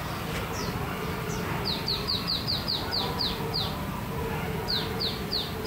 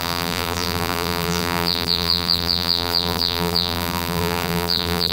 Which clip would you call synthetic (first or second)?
second